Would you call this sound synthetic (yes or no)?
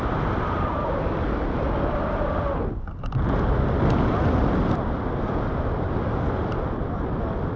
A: no